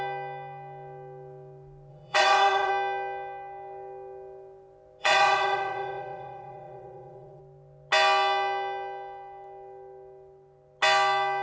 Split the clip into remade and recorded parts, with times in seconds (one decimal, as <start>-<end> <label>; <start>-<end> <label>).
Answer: 0.0-1.9 recorded; 1.9-2.7 remade; 2.7-5.0 recorded; 5.0-7.4 remade; 7.4-11.4 recorded